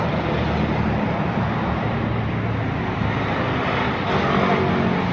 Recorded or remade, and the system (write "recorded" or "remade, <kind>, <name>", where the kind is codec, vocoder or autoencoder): recorded